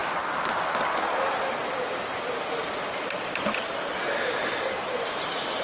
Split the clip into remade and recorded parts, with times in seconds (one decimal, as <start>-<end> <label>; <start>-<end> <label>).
0.0-5.6 recorded